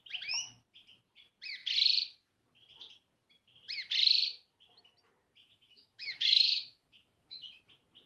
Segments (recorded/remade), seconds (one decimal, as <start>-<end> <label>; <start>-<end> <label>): 0.0-5.4 recorded; 5.4-7.6 remade; 7.6-8.1 recorded